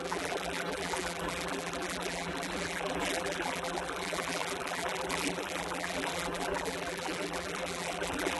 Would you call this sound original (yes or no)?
no